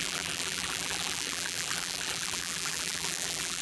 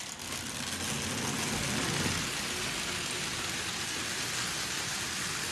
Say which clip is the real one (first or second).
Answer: second